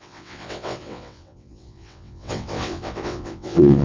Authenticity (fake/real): fake